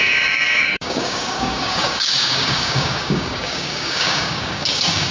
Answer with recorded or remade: remade